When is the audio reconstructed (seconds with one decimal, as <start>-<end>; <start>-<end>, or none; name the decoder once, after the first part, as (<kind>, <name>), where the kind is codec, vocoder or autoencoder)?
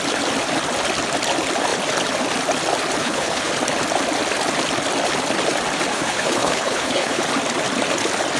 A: 3.0-3.5 (codec, HILCodec); 5.9-7.2